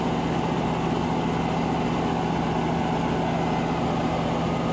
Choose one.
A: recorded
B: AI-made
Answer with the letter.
A